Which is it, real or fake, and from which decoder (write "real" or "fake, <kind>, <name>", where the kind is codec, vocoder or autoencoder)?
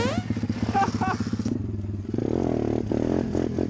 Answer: real